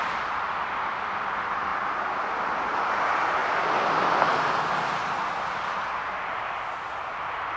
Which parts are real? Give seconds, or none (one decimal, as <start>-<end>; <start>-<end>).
1.7-2.7; 3.4-7.6